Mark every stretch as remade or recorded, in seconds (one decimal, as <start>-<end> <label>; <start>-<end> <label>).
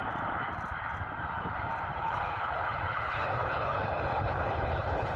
0.0-2.0 recorded; 2.0-5.2 remade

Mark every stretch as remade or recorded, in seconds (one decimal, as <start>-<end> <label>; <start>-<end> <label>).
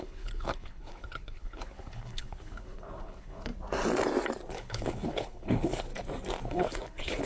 0.0-3.5 remade; 3.5-4.5 recorded; 4.5-5.9 remade; 5.9-6.5 recorded; 6.5-7.3 remade